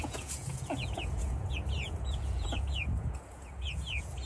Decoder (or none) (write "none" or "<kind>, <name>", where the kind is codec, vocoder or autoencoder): vocoder, Vocos